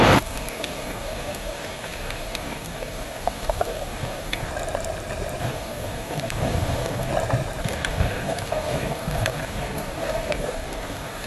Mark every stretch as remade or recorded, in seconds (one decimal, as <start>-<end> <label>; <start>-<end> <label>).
0.0-4.5 remade; 4.5-5.4 recorded; 5.4-7.1 remade; 7.1-7.6 recorded; 7.6-11.3 remade